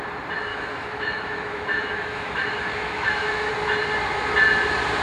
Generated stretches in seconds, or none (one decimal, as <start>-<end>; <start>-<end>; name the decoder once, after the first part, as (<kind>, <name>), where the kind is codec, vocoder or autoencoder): 0.5-3.5 (autoencoder, DAC-VAE)